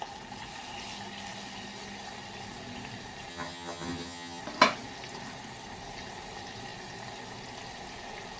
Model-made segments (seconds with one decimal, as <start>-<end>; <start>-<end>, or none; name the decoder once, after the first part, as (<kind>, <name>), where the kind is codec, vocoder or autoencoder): 3.3-4.4 (vocoder, HiFi-GAN)